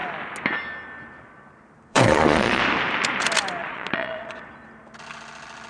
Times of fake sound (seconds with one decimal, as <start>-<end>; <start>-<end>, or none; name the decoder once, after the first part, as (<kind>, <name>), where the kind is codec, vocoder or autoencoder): 1.9-2.6 (vocoder, Vocos); 3.6-4.5